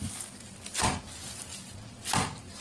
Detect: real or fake real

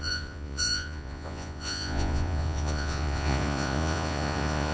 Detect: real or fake fake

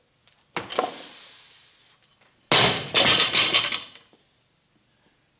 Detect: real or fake real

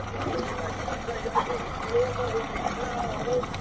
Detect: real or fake real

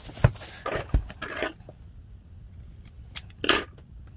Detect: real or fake real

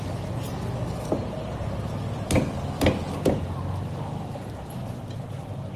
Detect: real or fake real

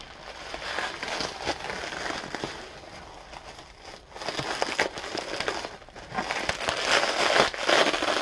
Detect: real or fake real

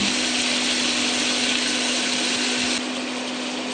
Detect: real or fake real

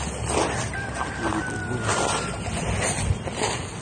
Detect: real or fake real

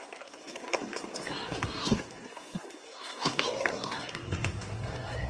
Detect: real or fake fake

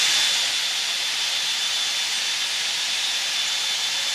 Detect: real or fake real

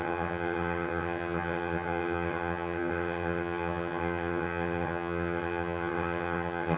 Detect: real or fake fake